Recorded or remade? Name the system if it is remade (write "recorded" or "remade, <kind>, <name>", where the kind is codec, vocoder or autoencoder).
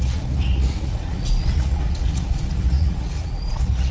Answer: remade, vocoder, Vocos